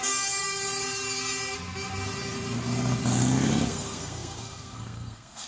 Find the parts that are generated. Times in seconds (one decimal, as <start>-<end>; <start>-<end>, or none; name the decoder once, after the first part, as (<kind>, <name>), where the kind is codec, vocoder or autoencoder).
0.0-0.4 (codec, SNAC); 3.7-5.5